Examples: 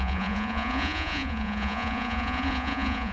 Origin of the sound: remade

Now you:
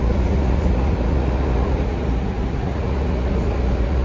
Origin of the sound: remade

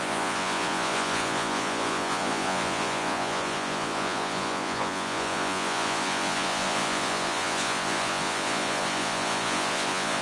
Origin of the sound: remade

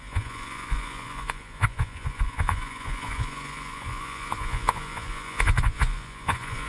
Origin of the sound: remade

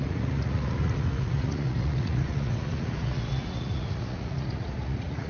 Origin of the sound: remade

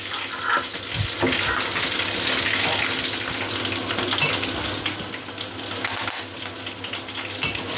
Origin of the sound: recorded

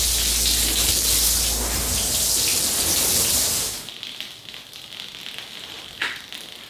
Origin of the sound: recorded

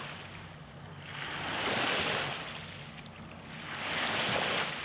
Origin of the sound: recorded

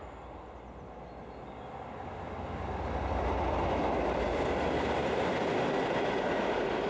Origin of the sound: recorded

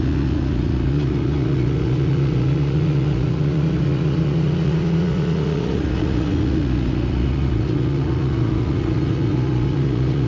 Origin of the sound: remade